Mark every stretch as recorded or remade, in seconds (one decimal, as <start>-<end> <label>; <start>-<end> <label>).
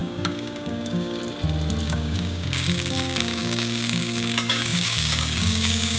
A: 0.0-1.2 remade; 1.2-1.8 recorded; 1.8-6.0 remade